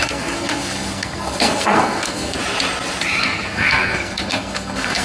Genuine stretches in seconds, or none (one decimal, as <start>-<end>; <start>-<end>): 2.4-3.2

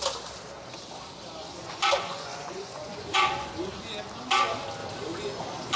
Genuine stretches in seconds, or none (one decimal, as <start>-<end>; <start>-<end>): 0.0-1.4; 3.5-5.8

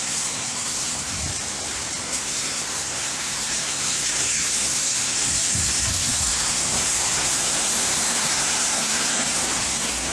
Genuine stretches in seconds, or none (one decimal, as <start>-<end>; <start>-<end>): 1.2-2.0

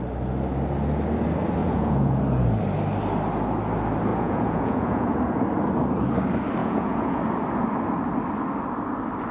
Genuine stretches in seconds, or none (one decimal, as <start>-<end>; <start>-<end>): 0.0-1.6; 2.2-4.1; 5.2-6.6; 7.2-9.3

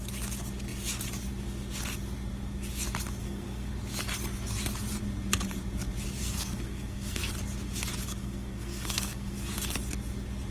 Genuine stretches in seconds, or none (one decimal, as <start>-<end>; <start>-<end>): 0.0-3.2; 3.7-6.2; 7.3-8.2; 9.5-10.5